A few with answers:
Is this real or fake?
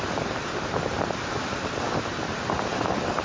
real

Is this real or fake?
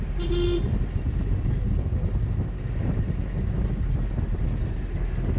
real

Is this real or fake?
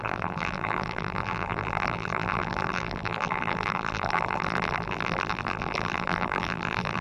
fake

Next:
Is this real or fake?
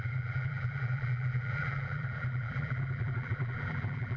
fake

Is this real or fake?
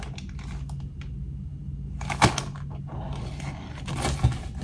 real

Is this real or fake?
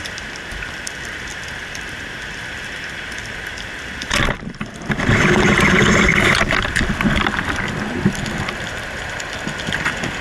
fake